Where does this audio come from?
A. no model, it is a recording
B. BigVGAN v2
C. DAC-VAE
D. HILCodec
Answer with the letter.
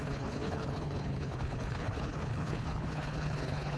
D